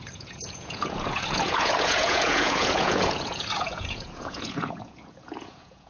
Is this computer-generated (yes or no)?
yes